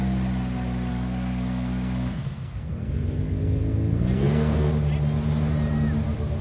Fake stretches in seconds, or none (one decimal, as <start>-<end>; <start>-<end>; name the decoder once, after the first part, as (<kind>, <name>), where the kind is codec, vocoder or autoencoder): 0.9-4.7 (codec, SNAC)